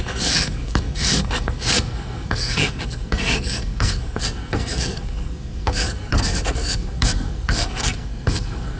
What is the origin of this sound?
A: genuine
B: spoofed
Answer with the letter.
B